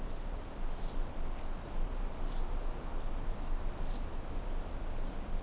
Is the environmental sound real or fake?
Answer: real